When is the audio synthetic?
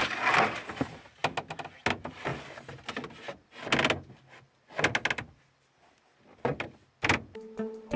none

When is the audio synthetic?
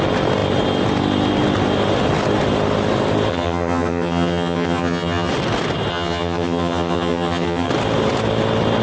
3.3-5.3 (vocoder, HiFi-GAN); 5.9-7.7